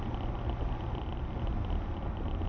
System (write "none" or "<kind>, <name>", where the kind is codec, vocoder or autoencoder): none